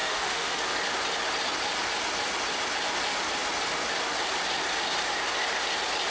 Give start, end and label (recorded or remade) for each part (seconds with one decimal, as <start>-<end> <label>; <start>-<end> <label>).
0.0-0.6 remade; 0.6-6.1 recorded